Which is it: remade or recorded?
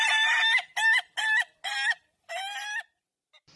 recorded